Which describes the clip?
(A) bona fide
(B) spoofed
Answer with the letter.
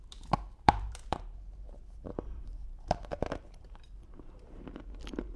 B